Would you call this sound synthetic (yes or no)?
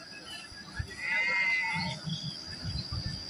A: no